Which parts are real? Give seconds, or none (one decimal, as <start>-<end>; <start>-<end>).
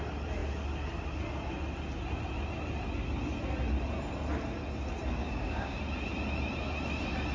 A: 0.0-5.2; 5.8-7.3